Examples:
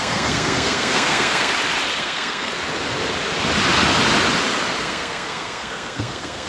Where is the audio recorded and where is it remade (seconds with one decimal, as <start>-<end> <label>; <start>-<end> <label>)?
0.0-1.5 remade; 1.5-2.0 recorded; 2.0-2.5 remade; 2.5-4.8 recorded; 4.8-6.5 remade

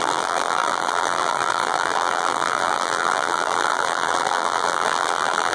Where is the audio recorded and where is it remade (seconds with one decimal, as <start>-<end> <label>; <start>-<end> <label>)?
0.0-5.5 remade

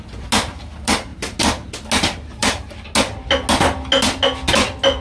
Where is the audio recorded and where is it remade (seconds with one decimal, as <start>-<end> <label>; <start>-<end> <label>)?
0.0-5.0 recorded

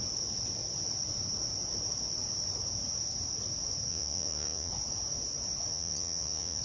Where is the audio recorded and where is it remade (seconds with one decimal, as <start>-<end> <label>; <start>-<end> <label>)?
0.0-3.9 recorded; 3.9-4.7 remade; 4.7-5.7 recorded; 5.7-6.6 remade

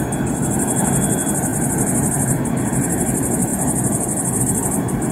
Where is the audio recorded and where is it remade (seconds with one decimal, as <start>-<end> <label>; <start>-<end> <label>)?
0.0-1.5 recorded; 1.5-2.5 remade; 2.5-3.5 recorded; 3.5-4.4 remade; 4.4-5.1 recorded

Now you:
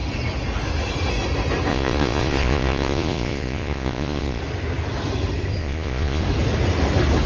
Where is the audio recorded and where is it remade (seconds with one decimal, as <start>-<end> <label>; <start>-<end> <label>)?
0.0-1.7 recorded; 1.7-4.4 remade; 4.4-5.6 recorded; 5.6-6.2 remade; 6.2-7.3 recorded

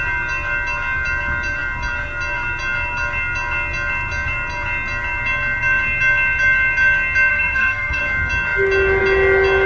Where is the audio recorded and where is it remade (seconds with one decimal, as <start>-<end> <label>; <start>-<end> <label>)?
0.0-7.3 recorded; 7.3-8.0 remade; 8.0-9.7 recorded

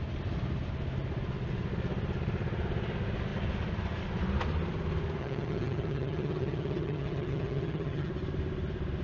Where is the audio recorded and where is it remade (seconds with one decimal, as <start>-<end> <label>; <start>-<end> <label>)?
0.0-5.2 recorded; 5.2-8.1 remade; 8.1-9.0 recorded